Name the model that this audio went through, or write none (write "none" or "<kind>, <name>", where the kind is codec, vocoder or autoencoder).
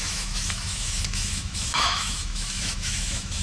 autoencoder, DAC-VAE